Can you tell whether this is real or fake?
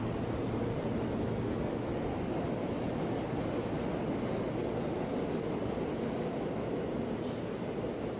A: real